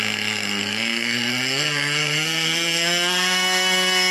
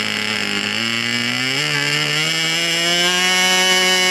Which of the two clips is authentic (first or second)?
second